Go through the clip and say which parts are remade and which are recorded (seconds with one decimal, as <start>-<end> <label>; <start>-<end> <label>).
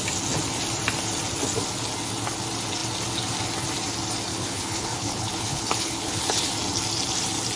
0.0-4.3 recorded; 4.3-6.5 remade; 6.5-7.6 recorded